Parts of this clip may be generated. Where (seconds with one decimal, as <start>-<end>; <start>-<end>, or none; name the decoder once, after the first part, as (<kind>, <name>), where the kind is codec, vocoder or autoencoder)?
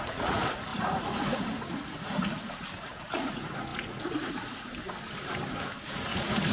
0.0-4.7 (vocoder, Vocos); 5.8-6.5